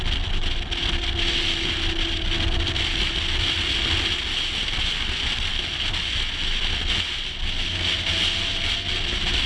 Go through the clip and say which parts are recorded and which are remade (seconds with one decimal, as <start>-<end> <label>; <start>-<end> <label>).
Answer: 0.0-9.5 recorded